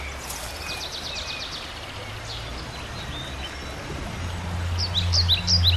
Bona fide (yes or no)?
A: yes